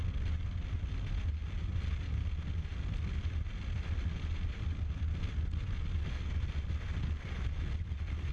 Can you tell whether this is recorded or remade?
recorded